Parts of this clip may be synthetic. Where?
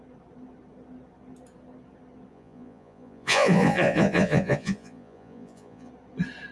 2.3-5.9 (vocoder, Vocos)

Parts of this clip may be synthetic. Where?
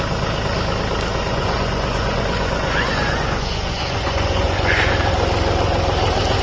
1.1-4.9 (vocoder, Vocos)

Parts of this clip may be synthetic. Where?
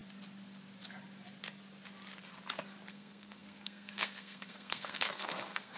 2.9-5.8 (codec, SNAC)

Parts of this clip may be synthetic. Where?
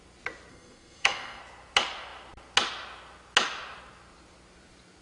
0.5-1.4 (codec, SNAC)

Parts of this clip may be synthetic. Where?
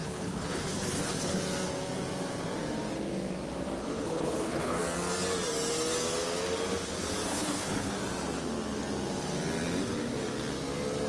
0.0-1.4 (codec, HILCodec); 3.8-4.8; 7.3-7.9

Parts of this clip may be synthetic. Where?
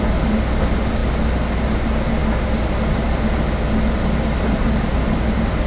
none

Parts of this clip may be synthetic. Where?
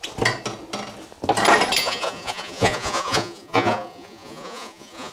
1.8-5.1 (vocoder, Vocos)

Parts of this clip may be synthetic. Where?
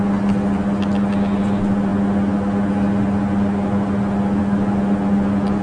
none